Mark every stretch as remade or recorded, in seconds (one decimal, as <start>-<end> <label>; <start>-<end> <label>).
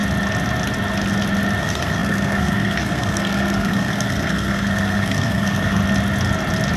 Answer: 0.0-1.6 recorded; 1.6-5.8 remade; 5.8-6.8 recorded